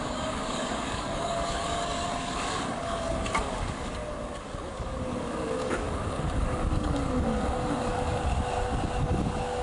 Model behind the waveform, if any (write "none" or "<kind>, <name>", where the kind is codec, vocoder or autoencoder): codec, DAC